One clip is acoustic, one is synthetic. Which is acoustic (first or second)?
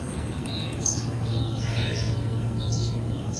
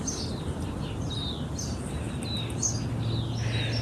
second